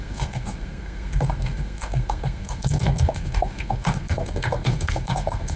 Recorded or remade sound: remade